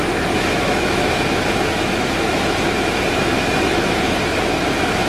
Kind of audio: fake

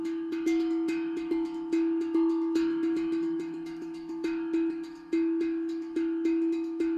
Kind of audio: fake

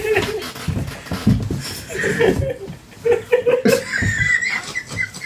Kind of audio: real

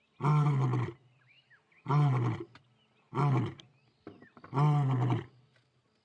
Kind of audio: real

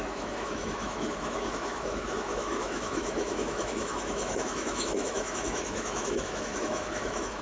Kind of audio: fake